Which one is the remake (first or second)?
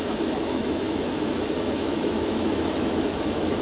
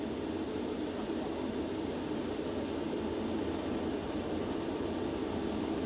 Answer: first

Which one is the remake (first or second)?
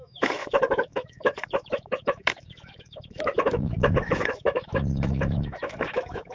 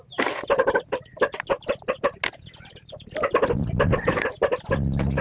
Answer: first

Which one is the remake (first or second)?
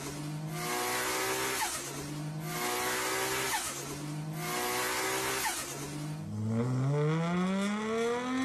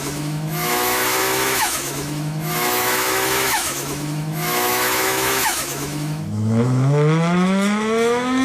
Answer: second